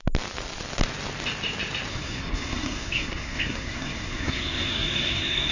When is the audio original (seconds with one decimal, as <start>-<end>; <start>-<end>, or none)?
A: 0.0-1.9